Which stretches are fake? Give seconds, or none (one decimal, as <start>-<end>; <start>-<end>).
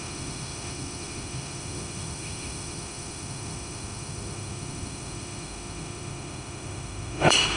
0.0-7.6